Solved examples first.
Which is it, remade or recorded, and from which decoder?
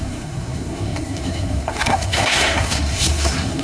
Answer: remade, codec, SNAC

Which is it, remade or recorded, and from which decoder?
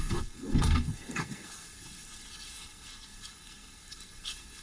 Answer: remade, codec, SNAC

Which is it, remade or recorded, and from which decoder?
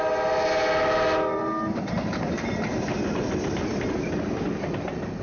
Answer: recorded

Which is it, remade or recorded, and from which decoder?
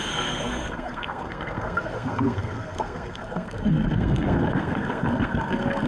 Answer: remade, codec, SNAC